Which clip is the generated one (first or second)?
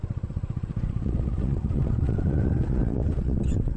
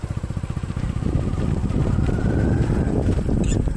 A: first